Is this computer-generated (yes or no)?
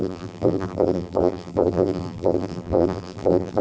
yes